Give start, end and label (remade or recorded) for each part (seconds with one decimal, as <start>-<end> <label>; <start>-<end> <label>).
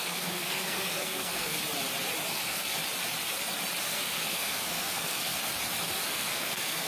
0.0-1.6 remade; 1.6-2.3 recorded; 2.3-2.8 remade; 2.8-3.8 recorded; 3.8-5.4 remade; 5.4-5.9 recorded; 5.9-6.9 remade